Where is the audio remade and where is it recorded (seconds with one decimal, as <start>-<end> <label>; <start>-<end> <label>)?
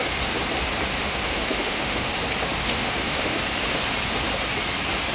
0.0-1.0 recorded; 1.0-2.1 remade; 2.1-2.6 recorded; 2.6-3.4 remade; 3.4-5.1 recorded